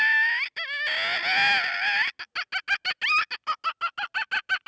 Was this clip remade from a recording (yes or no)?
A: no